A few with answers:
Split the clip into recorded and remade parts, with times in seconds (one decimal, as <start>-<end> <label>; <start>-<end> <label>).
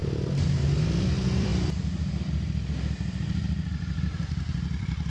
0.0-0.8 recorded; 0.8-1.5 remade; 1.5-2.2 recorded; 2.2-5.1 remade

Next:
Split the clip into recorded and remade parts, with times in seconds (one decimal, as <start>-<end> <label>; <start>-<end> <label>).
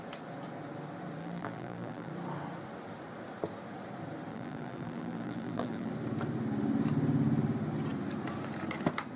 0.0-1.2 recorded; 1.2-2.1 remade; 2.1-4.3 recorded; 4.3-5.9 remade; 5.9-9.2 recorded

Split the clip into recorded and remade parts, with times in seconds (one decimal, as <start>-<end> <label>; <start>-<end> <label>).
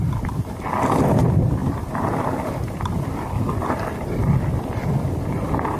0.0-1.6 remade; 1.6-4.4 recorded; 4.4-5.8 remade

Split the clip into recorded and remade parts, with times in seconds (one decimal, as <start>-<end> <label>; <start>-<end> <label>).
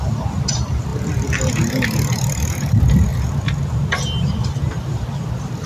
0.0-5.7 recorded